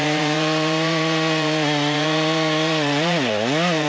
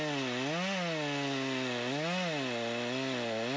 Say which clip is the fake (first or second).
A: first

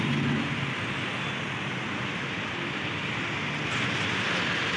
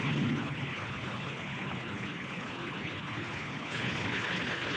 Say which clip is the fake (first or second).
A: second